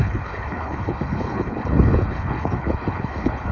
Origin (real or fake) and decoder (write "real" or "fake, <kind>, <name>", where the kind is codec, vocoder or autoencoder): fake, codec, HILCodec